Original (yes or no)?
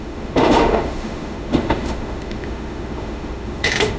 no